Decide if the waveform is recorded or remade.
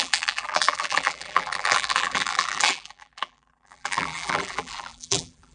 remade